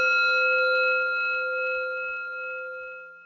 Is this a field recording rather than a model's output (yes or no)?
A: yes